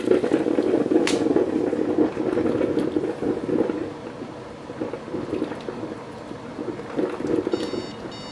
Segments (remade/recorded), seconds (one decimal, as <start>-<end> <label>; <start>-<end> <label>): 0.0-8.3 recorded